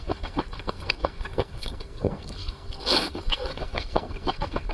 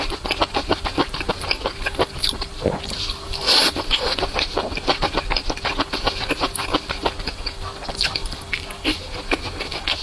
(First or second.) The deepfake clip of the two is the first